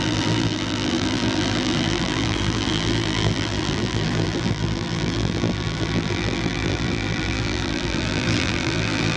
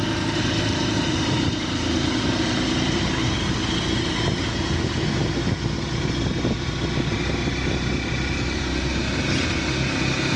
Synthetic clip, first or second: first